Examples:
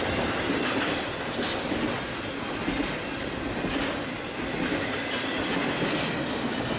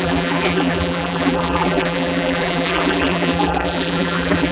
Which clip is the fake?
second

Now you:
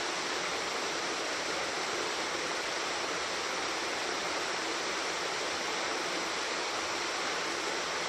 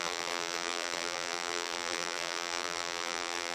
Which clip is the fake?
second